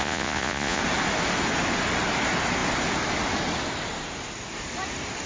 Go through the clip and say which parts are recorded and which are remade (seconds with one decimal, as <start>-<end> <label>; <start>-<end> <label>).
0.0-0.8 remade; 0.8-5.3 recorded